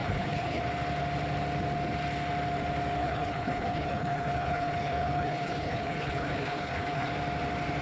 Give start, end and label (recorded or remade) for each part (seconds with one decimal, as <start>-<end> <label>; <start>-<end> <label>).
0.0-0.6 remade; 0.6-3.0 recorded; 3.0-7.1 remade; 7.1-7.8 recorded